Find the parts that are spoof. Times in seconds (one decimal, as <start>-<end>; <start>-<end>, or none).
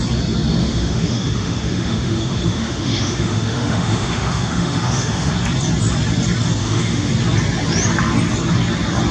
0.6-5.3; 6.6-7.1